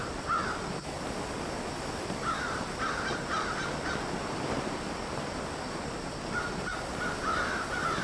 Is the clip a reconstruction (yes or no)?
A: no